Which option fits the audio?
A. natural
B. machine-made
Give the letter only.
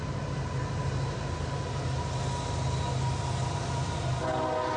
A